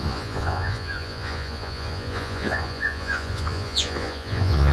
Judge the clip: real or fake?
fake